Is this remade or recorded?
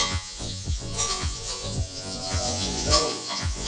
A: remade